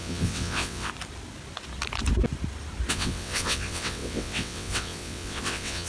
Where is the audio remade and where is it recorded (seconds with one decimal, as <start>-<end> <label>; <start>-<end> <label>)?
0.0-0.9 remade; 0.9-2.9 recorded; 2.9-5.9 remade